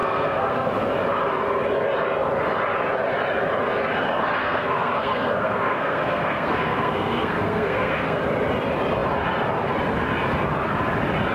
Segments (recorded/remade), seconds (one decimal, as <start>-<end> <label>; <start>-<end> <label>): 0.0-0.7 remade; 0.7-4.4 recorded; 4.4-8.2 remade; 8.2-11.3 recorded